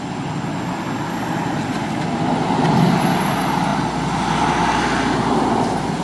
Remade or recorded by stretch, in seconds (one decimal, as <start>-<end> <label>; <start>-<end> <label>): 0.0-6.0 recorded